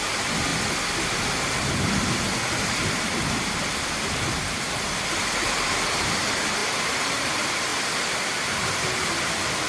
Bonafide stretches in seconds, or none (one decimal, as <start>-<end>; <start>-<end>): none